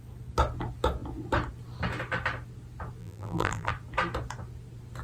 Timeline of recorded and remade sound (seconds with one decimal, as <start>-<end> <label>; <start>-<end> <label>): 0.0-3.0 recorded; 3.0-3.7 remade; 3.7-5.0 recorded